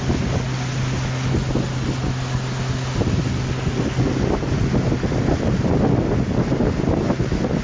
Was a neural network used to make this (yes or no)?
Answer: no